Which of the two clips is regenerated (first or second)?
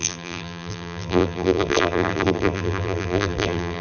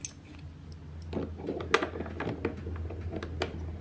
first